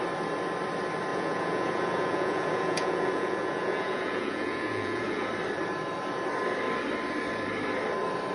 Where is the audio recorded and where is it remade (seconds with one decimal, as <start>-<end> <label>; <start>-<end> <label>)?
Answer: 0.0-1.1 recorded; 1.1-5.3 remade; 5.3-8.3 recorded